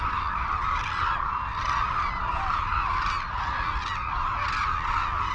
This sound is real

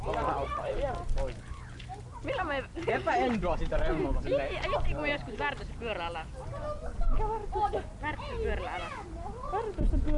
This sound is real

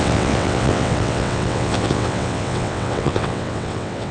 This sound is fake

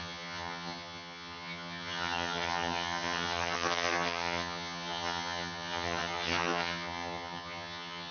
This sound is fake